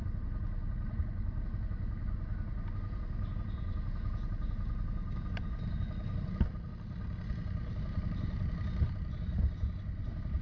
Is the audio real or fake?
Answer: real